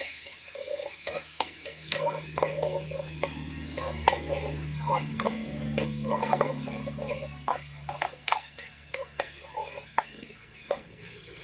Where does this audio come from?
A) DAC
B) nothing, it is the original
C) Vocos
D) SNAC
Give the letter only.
D